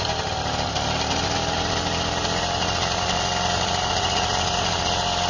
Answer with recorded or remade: recorded